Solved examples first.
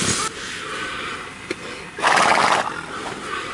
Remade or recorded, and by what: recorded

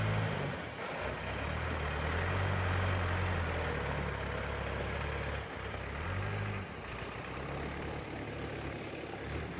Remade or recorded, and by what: recorded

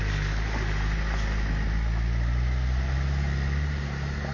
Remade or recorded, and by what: recorded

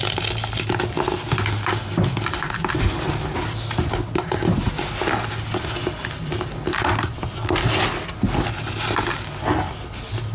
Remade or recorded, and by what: recorded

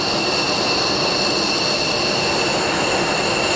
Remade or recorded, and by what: recorded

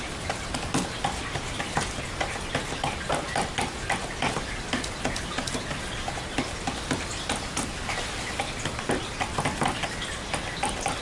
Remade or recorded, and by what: recorded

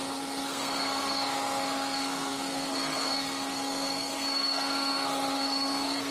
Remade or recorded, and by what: remade, codec, SNAC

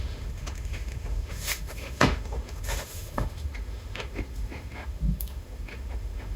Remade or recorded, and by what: remade, autoencoder, DAC-VAE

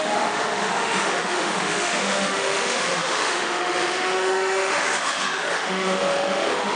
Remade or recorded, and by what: remade, autoencoder, DAC-VAE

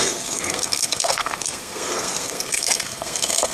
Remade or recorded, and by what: remade, codec, SNAC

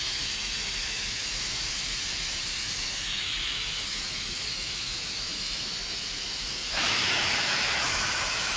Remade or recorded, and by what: remade, autoencoder, DAC-VAE